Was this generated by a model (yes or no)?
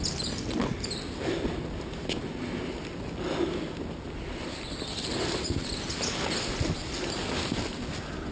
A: no